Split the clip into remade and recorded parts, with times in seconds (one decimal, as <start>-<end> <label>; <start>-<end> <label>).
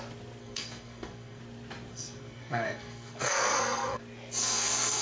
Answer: 0.0-0.4 recorded; 0.4-1.4 remade; 1.4-1.9 recorded; 1.9-4.0 remade; 4.0-4.4 recorded; 4.4-5.0 remade